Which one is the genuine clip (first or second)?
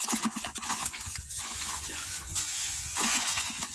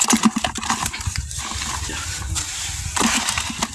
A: second